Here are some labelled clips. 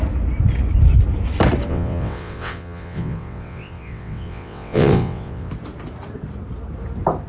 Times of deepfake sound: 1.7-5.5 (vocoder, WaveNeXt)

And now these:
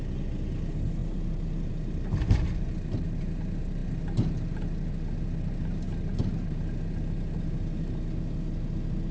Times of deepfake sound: none